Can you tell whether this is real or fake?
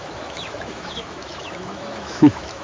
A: fake